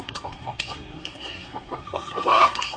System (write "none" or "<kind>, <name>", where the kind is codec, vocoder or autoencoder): codec, SNAC